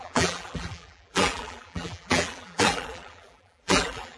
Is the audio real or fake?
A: fake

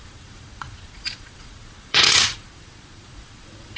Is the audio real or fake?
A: fake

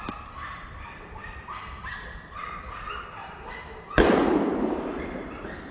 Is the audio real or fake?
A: real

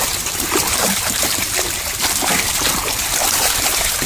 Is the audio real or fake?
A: fake